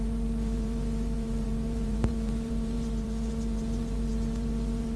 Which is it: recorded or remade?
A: remade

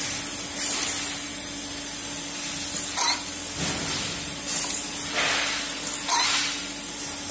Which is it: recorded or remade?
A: recorded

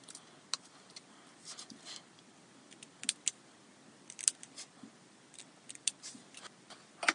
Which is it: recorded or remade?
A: recorded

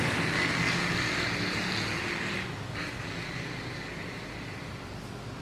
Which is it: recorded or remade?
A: recorded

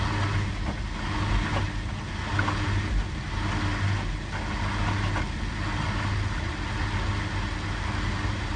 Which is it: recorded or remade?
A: recorded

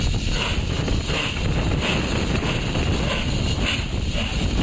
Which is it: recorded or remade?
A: recorded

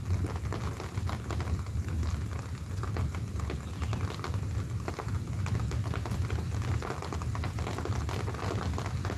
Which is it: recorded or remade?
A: recorded